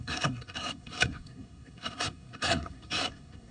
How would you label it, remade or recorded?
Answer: remade